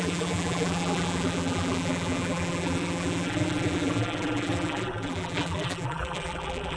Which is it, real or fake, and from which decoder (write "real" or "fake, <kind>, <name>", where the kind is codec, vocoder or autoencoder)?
fake, vocoder, BigVGAN v2